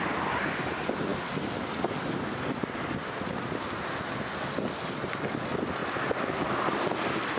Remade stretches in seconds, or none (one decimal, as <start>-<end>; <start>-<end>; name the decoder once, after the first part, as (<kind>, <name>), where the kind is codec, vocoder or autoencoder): none